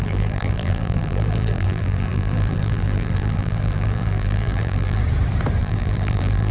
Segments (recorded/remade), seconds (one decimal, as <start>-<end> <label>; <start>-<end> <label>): 0.0-5.0 remade; 5.0-5.6 recorded; 5.6-6.5 remade

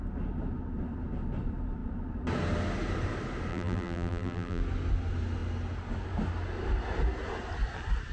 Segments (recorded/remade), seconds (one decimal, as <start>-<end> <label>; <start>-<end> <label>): 0.0-3.5 recorded; 3.5-4.6 remade; 4.6-8.1 recorded

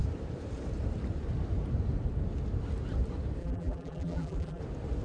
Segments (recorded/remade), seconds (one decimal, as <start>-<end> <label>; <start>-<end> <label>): 0.0-3.4 recorded; 3.4-4.6 remade; 4.6-5.0 recorded

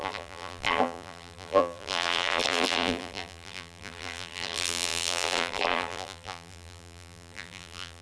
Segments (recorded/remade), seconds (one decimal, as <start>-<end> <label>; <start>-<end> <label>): 0.0-8.0 remade